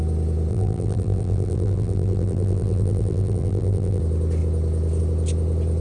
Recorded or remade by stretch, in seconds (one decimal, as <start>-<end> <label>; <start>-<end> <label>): 0.0-0.5 recorded; 0.5-4.0 remade; 4.0-5.8 recorded